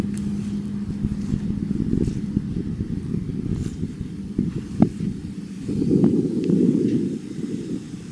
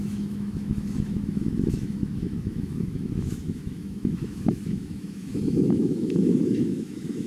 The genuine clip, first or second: first